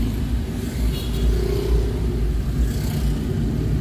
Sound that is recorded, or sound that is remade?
recorded